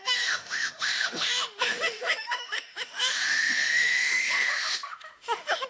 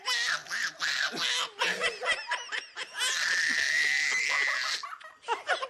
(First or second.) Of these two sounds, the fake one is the first